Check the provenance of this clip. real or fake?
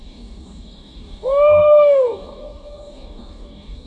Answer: fake